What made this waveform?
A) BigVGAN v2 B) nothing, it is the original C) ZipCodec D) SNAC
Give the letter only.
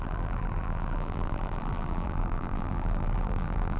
A